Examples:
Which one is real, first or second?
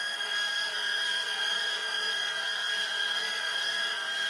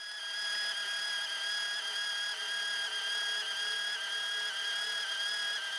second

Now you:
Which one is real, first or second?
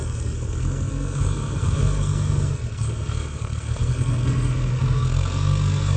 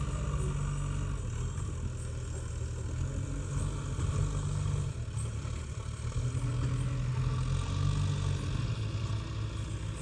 second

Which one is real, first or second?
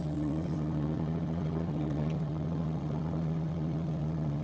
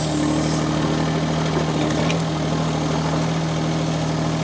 second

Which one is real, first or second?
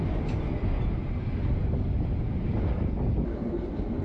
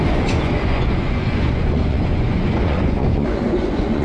first